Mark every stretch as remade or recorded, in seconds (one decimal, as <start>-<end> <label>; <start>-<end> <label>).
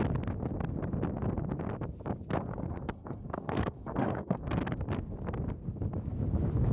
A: 0.0-2.5 recorded; 2.5-4.4 remade; 4.4-6.7 recorded